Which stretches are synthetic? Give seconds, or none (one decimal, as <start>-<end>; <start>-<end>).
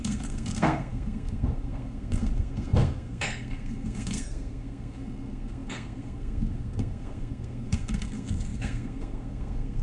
0.0-9.8